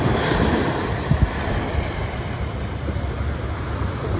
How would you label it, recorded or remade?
recorded